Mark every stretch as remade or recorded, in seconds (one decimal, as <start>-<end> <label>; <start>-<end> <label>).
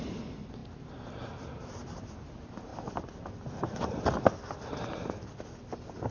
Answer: 0.0-6.1 recorded